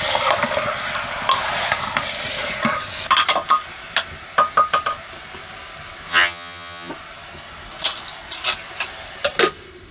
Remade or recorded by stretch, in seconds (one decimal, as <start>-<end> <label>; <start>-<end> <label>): 0.0-6.1 recorded; 6.1-6.9 remade; 6.9-9.9 recorded